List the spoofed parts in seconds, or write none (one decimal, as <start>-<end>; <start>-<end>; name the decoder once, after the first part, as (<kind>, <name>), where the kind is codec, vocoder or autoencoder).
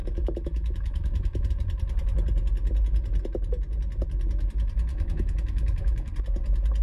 0.0-1.5 (autoencoder, DAC-VAE); 4.9-6.1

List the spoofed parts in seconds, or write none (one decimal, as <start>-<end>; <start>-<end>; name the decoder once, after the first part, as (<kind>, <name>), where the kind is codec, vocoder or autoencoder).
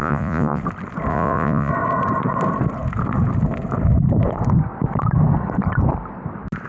0.0-0.6 (vocoder, Vocos); 1.1-1.7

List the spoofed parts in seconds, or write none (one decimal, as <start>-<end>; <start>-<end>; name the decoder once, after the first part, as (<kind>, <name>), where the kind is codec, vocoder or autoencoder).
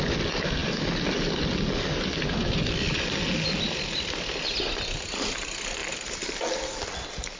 none